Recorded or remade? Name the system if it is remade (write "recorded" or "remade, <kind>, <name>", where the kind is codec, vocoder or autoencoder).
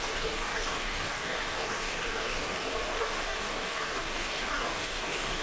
remade, codec, DAC